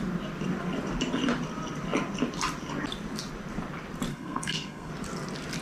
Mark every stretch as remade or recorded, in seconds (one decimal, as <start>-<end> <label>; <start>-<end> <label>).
0.0-4.1 recorded; 4.1-4.9 remade; 4.9-5.6 recorded